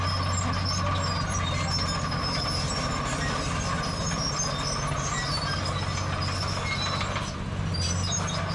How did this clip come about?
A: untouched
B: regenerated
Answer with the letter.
A